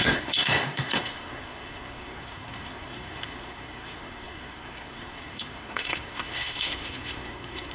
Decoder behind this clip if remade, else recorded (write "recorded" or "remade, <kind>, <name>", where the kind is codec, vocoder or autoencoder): remade, codec, SNAC